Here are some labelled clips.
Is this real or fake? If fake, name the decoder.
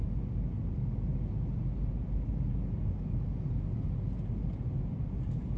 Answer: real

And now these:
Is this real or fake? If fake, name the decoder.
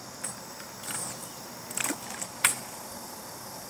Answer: real